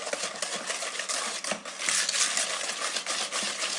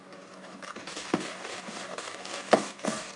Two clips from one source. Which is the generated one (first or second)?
second